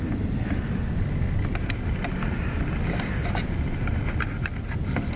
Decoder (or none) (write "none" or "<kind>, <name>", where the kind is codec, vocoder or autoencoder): none